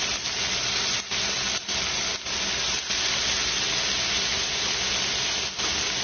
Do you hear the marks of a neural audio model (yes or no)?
no